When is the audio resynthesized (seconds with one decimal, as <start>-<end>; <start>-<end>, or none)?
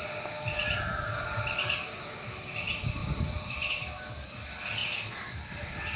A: none